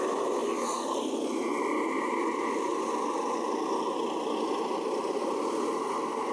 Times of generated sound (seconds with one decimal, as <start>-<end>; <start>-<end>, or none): none